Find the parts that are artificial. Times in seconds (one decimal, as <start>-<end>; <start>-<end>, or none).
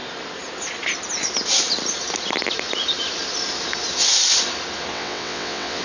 4.9-5.8